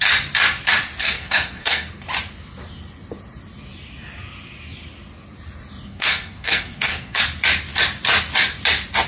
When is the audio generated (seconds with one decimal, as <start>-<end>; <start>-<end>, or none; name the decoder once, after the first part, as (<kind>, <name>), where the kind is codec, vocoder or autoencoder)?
1.0-1.9 (codec, SNAC); 5.9-7.2